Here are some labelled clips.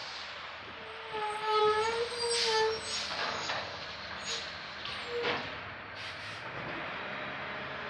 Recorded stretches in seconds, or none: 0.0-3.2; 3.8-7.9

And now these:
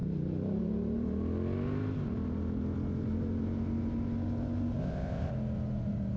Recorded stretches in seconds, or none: 0.0-4.8; 5.3-6.2

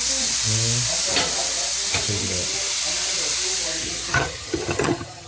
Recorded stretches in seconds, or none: 0.0-4.1

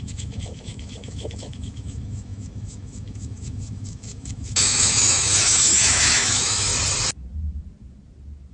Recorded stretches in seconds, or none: 6.7-8.5

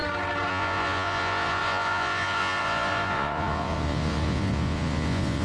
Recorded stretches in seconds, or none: 0.0-0.5

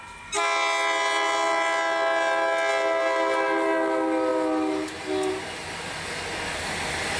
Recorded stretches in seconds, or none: 0.0-7.2